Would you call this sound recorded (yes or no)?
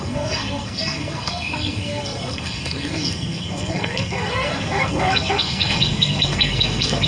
no